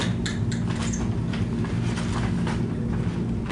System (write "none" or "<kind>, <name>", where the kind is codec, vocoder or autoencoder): none